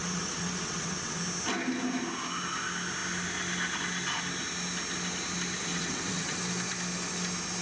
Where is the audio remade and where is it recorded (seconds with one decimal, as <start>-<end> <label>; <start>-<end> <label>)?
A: 0.0-1.2 remade; 1.2-5.7 recorded; 5.7-6.4 remade; 6.4-7.6 recorded